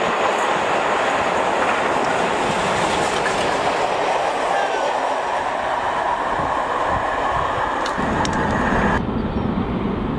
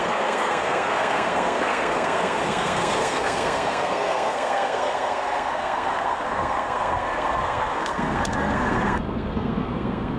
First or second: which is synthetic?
second